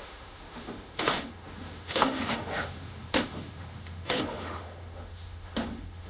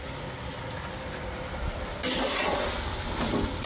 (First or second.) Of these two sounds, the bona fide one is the second